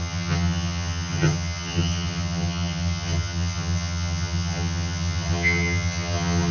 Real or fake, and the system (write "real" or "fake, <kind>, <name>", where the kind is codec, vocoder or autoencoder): fake, vocoder, HiFi-GAN